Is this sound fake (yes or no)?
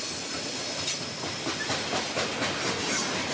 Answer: no